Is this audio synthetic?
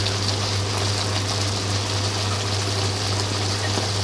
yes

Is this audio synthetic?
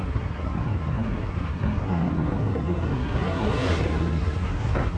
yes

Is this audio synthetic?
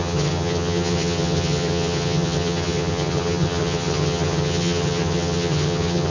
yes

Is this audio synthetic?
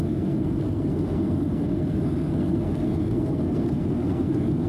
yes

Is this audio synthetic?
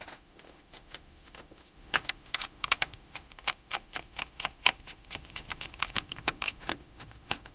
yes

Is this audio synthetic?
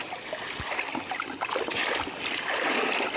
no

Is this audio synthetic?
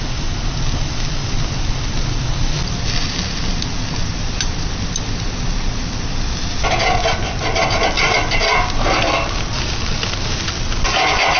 no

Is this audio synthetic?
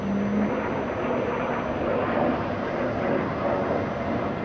no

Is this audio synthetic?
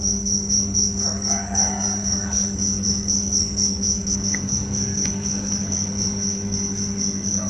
yes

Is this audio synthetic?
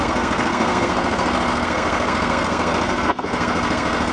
yes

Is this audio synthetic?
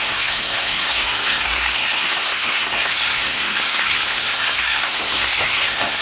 yes